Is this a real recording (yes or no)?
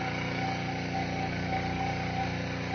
yes